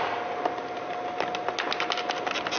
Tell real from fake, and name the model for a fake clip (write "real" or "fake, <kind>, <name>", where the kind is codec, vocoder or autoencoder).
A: real